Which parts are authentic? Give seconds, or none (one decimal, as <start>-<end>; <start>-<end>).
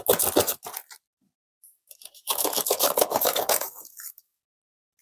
0.0-1.4; 4.4-5.0